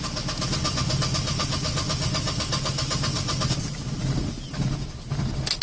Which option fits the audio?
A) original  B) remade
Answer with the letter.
A